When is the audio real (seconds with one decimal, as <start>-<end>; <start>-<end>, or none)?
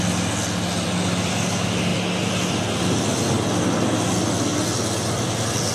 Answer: 0.0-5.7